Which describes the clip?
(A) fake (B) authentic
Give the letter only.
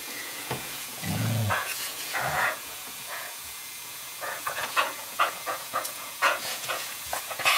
A